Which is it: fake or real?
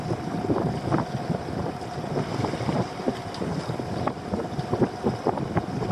real